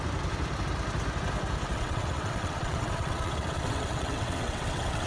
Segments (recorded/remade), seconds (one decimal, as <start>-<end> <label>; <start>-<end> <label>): 0.0-1.7 recorded; 1.7-5.1 remade